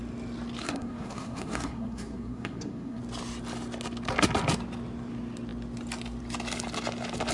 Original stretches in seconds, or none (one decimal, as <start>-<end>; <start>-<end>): 0.0-0.6; 3.0-7.3